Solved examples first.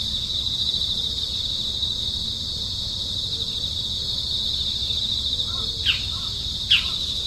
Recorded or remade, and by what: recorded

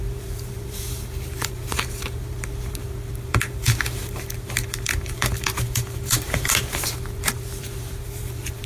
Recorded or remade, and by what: remade, vocoder, BigVGAN v2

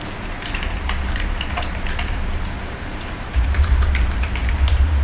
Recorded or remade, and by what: remade, vocoder, BigVGAN v2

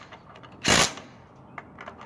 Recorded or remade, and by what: recorded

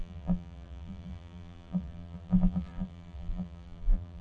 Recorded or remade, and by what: remade, vocoder, BigVGAN v2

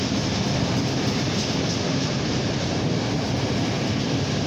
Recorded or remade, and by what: recorded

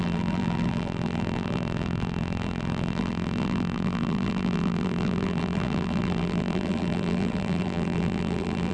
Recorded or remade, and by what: remade, vocoder, BigVGAN v2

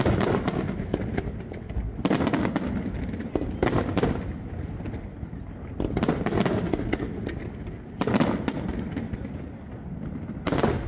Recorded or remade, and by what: recorded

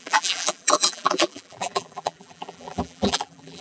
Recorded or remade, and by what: remade, vocoder, BigVGAN v2